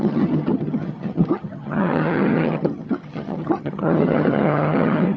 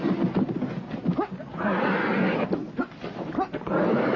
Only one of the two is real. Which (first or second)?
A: second